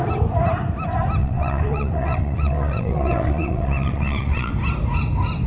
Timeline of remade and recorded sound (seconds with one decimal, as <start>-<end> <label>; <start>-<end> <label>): 0.0-1.2 recorded; 1.2-4.5 remade; 4.5-5.5 recorded

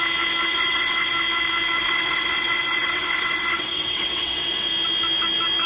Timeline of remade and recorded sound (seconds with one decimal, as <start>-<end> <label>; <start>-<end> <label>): 0.0-0.5 recorded; 0.5-1.1 remade; 1.1-1.8 recorded; 1.8-4.7 remade; 4.7-5.7 recorded

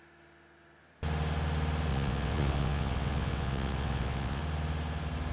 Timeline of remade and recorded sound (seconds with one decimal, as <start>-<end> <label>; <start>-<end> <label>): 0.0-1.9 recorded; 1.9-4.4 remade; 4.4-5.3 recorded

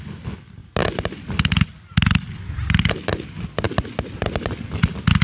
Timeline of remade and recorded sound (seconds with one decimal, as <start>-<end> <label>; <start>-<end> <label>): 0.0-5.2 recorded